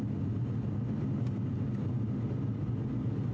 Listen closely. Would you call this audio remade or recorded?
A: recorded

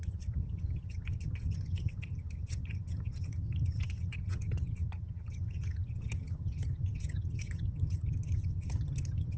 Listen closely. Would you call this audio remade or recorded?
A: remade